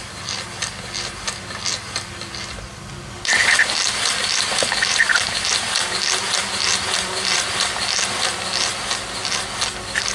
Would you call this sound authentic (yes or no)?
yes